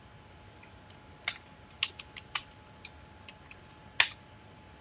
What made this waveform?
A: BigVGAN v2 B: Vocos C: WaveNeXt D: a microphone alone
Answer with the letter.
D